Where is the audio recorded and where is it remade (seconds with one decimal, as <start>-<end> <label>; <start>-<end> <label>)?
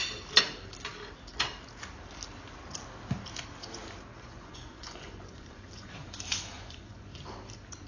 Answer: 0.0-4.1 recorded; 4.1-7.2 remade; 7.2-7.9 recorded